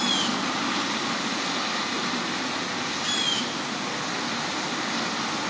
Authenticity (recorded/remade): recorded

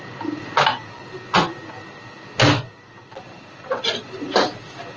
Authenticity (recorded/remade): recorded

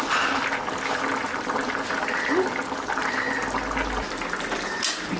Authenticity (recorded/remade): recorded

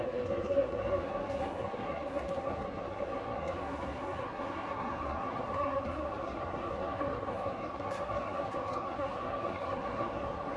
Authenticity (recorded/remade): remade